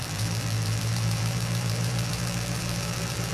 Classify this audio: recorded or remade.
remade